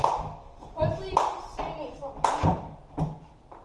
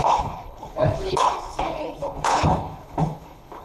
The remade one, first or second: second